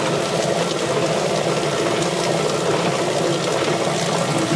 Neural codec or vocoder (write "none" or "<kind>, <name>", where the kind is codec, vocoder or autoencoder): none